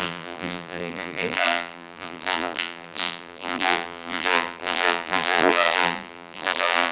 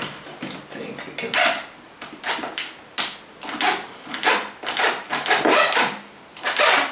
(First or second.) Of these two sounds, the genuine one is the second